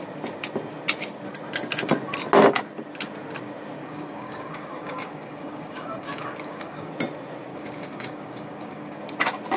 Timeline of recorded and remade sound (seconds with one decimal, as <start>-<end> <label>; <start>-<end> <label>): 0.0-3.8 recorded; 3.8-6.9 remade; 6.9-7.5 recorded; 7.5-9.0 remade; 9.0-9.6 recorded